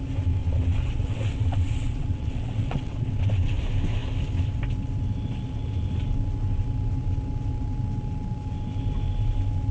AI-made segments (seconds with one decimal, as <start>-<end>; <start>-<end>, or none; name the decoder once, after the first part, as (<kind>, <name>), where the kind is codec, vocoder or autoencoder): 0.4-3.6 (vocoder, WaveNeXt)

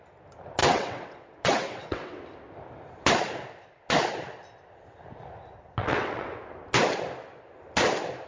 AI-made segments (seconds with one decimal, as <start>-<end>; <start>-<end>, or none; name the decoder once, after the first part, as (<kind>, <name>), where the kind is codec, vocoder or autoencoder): 0.6-2.2 (vocoder, WaveNeXt); 5.8-6.4